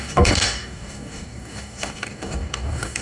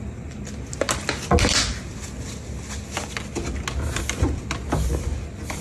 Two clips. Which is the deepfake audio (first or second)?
first